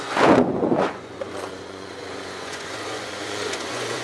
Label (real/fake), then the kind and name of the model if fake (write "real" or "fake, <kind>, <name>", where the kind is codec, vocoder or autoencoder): fake, vocoder, Vocos